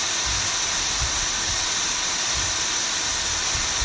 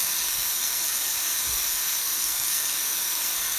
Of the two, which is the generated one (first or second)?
second